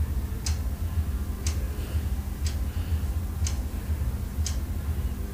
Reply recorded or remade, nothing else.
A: recorded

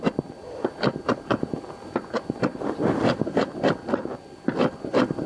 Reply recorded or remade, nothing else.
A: recorded